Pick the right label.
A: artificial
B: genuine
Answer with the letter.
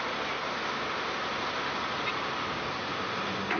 B